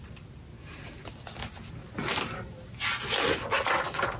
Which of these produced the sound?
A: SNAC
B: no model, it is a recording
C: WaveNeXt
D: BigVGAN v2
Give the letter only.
B